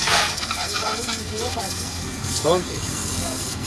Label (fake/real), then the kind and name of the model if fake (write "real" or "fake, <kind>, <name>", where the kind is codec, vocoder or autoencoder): fake, codec, SNAC